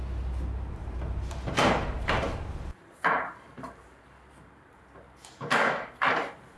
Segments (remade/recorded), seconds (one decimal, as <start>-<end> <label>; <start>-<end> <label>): 0.0-0.8 recorded; 0.8-4.8 remade; 4.8-6.6 recorded